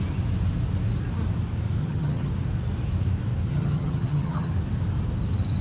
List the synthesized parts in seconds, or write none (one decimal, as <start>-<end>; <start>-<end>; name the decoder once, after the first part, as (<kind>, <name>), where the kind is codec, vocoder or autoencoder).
1.8-2.3 (vocoder, HiFi-GAN); 3.5-4.5